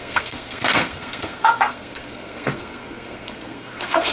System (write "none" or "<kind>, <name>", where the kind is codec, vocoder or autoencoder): codec, SNAC